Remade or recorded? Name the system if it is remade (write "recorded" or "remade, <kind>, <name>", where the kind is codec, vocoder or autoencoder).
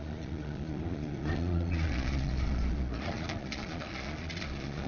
remade, vocoder, Vocos